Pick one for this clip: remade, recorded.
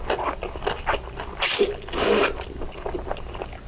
recorded